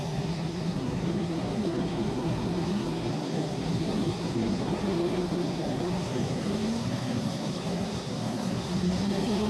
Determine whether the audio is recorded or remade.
remade